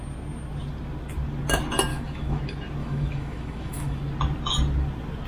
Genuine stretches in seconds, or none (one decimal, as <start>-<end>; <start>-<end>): 0.0-1.9; 2.4-2.8; 4.0-5.3